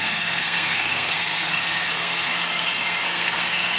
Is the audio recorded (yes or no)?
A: no